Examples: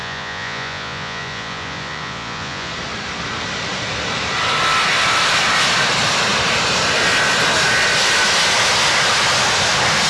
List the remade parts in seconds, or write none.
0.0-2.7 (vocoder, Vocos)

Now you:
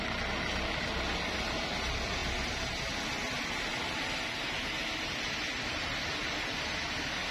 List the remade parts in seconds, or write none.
none

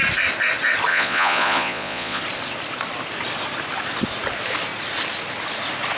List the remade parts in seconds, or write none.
0.9-2.2 (vocoder, Vocos)

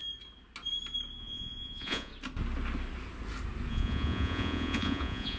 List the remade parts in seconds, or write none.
1.2-2.1 (vocoder, Vocos); 3.7-5.4

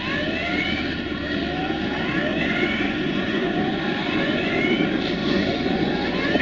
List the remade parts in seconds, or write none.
2.3-4.6 (vocoder, Vocos); 5.2-6.4

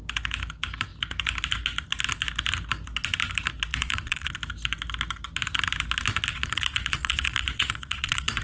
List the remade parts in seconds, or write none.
3.7-4.3 (vocoder, Vocos); 6.3-8.4

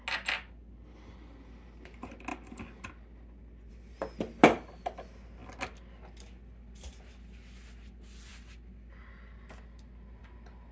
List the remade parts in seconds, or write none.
none